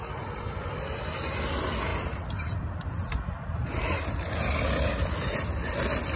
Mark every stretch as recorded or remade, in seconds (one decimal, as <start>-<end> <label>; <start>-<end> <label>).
0.0-6.2 recorded